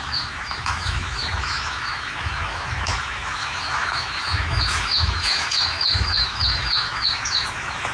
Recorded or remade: remade